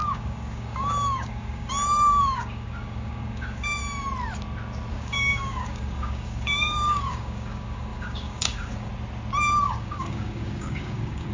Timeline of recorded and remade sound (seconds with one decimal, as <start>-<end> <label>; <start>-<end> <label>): 0.0-3.8 remade; 3.8-4.9 recorded; 4.9-8.9 remade; 8.9-9.6 recorded; 9.6-11.3 remade